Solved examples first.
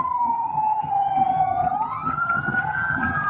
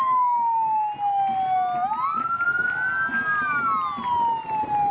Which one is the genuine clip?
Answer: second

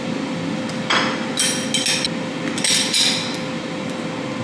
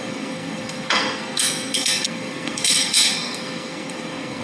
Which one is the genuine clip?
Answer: first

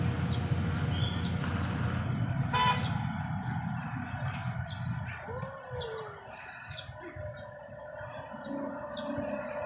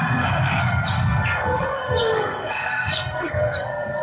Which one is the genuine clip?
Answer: first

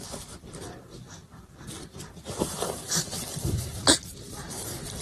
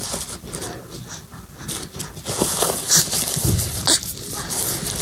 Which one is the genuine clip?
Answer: second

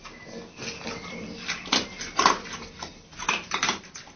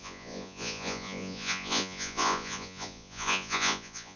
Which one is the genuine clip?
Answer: first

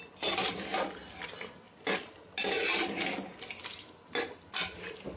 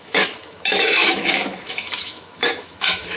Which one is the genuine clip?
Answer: first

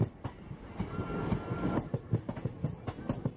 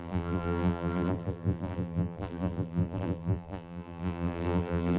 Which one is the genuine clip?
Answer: first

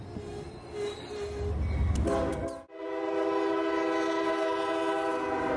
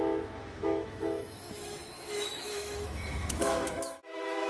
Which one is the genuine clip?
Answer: first